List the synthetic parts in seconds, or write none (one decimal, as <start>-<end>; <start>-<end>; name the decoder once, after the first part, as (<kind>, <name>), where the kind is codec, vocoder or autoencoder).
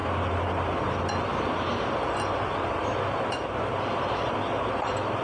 none